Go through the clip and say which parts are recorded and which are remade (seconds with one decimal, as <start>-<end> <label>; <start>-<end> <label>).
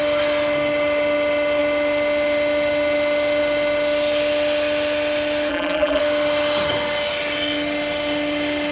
0.0-5.5 recorded; 5.5-6.0 remade; 6.0-8.7 recorded